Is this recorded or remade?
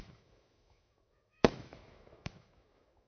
remade